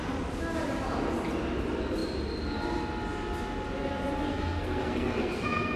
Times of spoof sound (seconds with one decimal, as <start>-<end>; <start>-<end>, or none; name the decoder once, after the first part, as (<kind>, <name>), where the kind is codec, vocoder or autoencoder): 4.3-5.8 (codec, SNAC)